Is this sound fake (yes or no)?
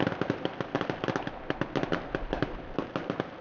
no